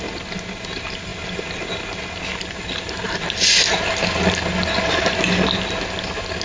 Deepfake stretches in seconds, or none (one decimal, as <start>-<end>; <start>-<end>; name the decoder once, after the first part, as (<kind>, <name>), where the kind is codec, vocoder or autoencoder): none